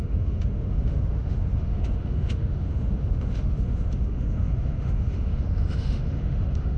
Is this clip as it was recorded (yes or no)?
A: no